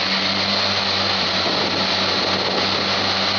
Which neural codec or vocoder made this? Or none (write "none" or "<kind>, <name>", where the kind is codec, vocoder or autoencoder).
none